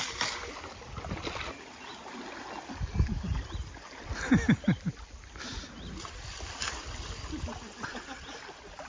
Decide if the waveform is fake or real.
real